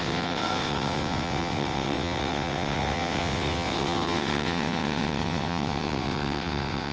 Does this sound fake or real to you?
fake